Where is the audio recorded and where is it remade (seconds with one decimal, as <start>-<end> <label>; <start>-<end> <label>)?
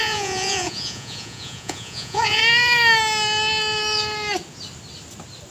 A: 0.0-2.4 remade; 2.4-5.5 recorded